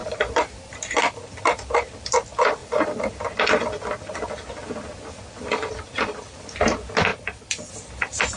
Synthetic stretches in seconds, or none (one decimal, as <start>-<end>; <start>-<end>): 0.0-1.0; 2.6-3.1; 7.1-7.7